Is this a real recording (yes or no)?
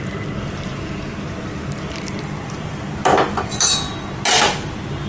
yes